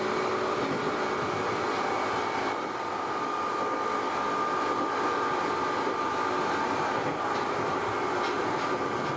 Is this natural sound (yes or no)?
yes